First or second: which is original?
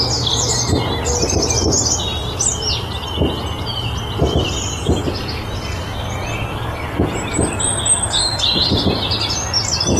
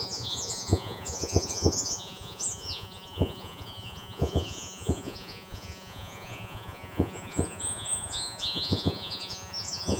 first